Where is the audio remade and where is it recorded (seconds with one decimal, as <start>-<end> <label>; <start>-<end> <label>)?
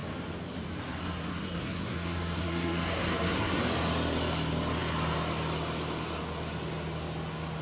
0.0-1.0 recorded; 1.0-3.6 remade; 3.6-7.6 recorded